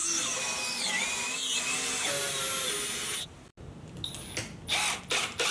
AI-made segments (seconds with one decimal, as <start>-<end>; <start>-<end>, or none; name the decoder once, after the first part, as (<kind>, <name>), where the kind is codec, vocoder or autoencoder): none